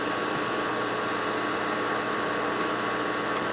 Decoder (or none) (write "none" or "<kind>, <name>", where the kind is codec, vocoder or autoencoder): none